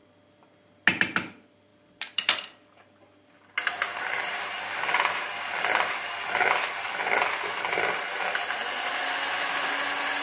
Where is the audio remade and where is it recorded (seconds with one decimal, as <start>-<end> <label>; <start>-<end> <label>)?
0.0-1.7 recorded; 1.7-4.3 remade; 4.3-10.2 recorded